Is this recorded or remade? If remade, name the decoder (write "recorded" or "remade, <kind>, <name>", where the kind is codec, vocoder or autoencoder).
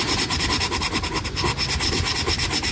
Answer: recorded